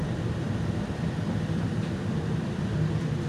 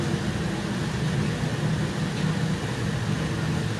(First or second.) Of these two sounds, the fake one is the first